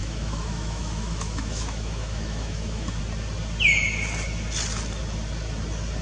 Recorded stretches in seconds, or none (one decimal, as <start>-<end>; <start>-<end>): 3.0-6.0